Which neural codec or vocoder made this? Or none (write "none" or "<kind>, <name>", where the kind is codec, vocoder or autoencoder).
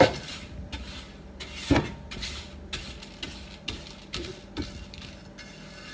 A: none